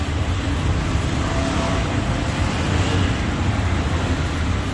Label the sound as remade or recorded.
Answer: recorded